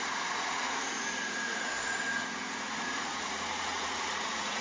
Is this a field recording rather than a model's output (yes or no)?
no